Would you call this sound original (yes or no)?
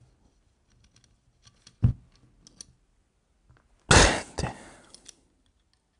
yes